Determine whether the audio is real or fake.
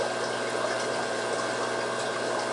real